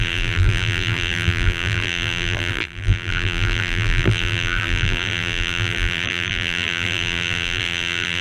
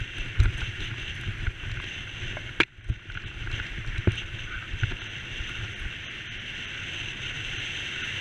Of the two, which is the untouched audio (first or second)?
second